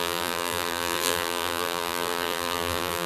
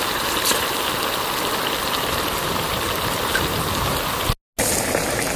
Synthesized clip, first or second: first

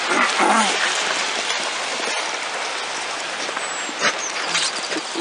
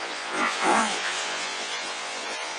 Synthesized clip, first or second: second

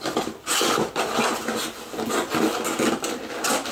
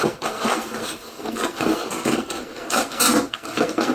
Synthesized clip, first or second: second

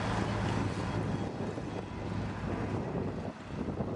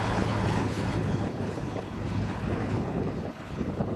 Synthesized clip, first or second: second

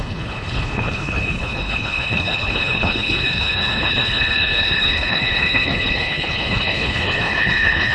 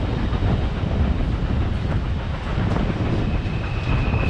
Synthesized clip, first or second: first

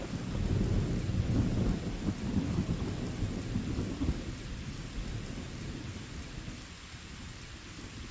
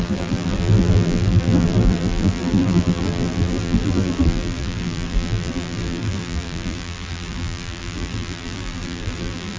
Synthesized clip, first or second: second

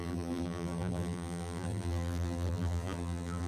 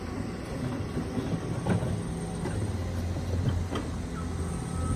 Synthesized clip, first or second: first